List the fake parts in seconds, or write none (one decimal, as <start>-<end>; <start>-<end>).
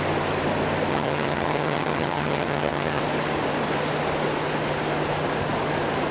0.9-3.0